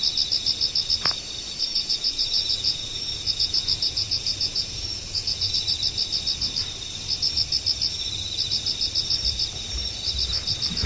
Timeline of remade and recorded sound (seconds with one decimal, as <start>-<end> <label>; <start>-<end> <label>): 0.0-1.7 recorded; 1.7-5.5 remade; 5.5-10.9 recorded